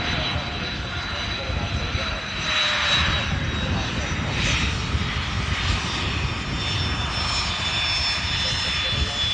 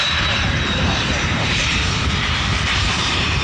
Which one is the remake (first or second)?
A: second